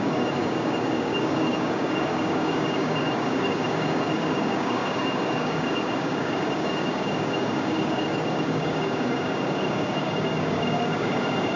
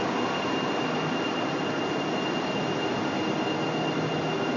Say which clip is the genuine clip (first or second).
second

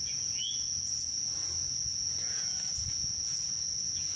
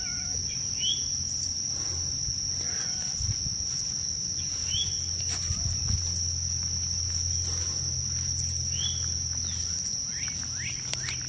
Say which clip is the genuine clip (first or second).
second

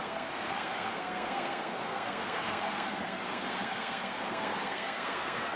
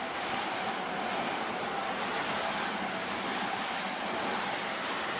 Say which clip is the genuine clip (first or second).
second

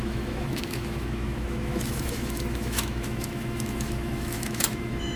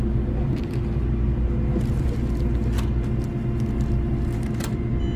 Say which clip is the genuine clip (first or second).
second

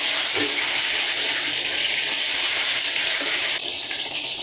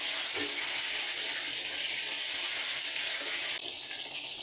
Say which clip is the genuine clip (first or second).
second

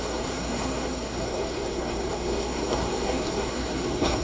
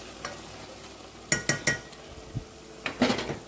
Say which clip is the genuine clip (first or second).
second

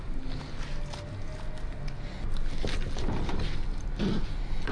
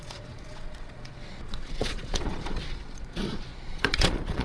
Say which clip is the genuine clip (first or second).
first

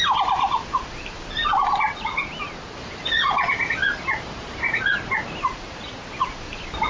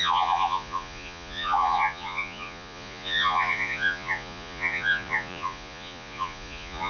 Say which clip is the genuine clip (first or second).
first